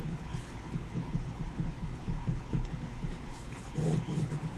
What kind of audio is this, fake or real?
fake